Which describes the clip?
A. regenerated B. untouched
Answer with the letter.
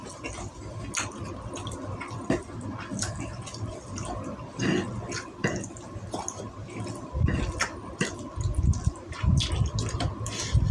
B